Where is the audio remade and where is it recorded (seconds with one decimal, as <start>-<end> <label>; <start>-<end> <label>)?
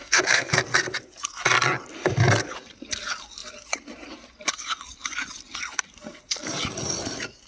0.0-0.6 remade; 0.6-7.5 recorded